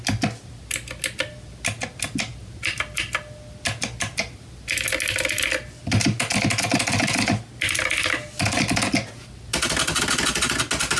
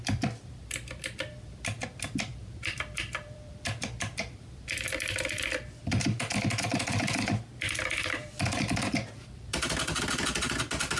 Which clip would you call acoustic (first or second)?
first